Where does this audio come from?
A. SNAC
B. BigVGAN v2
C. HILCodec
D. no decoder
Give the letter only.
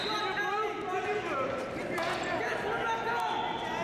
D